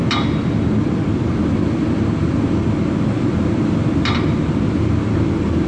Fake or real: real